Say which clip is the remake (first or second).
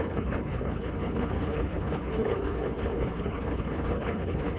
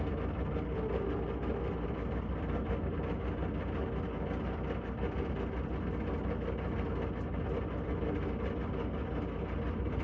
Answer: first